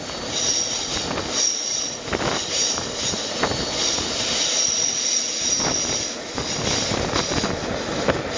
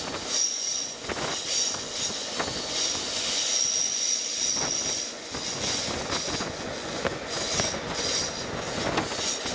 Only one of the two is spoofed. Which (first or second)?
second